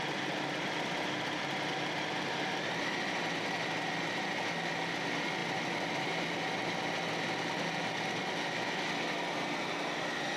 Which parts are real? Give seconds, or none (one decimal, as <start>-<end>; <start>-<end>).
0.0-10.4